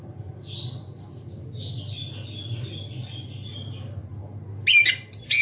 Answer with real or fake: real